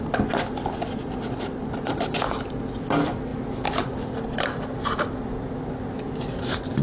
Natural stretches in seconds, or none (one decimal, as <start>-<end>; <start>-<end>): 0.0-6.8